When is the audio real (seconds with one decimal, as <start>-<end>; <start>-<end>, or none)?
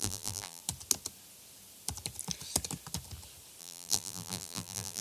0.6-3.6